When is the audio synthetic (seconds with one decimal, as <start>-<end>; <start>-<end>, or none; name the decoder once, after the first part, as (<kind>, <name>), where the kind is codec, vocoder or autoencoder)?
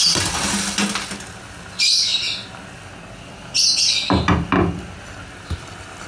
none